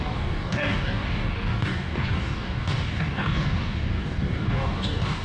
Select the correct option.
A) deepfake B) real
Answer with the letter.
A